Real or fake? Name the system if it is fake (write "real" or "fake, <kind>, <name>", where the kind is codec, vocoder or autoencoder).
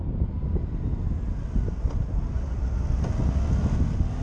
real